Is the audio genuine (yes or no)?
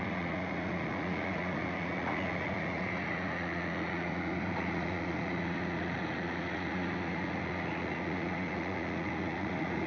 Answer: no